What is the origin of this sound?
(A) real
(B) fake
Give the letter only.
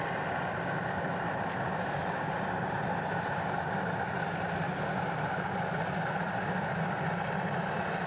A